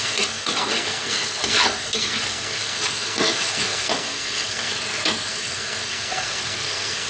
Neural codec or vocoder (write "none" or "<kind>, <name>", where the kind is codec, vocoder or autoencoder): codec, SNAC